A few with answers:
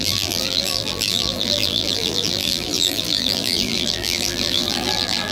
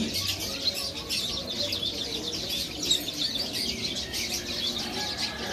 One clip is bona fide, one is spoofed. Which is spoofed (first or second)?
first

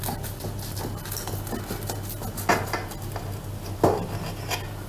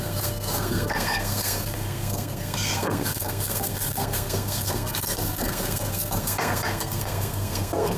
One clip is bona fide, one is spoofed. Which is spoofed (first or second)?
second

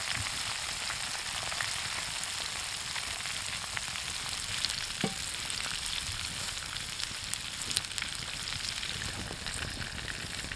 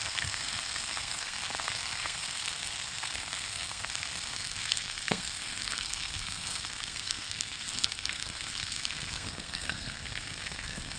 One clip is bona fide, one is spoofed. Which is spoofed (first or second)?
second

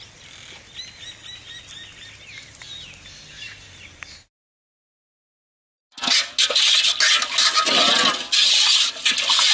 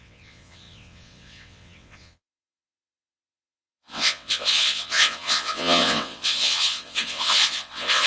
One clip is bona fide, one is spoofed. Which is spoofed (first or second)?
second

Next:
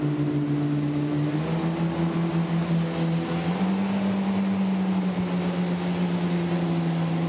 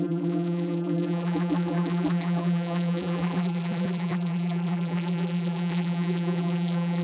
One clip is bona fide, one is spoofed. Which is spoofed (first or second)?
second